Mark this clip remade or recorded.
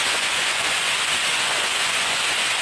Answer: remade